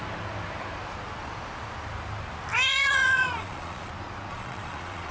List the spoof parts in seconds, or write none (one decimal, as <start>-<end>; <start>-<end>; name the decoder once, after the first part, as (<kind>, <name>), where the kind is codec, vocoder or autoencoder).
2.7-3.9 (vocoder, Vocos); 4.3-5.1

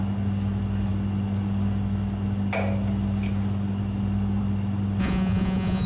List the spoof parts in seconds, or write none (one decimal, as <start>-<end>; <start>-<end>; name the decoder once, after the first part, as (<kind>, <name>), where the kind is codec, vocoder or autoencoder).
5.0-5.9 (vocoder, Vocos)

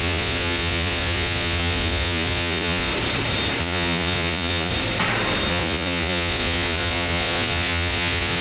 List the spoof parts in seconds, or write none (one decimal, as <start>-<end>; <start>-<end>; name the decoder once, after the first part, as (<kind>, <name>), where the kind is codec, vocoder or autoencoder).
0.0-2.9 (vocoder, Vocos); 3.6-4.7; 5.5-8.4